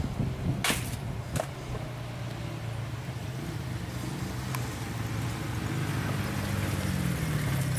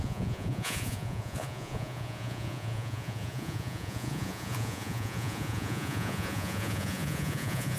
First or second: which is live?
first